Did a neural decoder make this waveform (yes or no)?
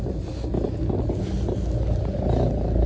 no